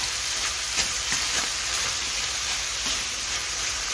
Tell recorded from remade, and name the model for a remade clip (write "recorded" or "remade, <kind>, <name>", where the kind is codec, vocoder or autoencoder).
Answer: remade, vocoder, BigVGAN v2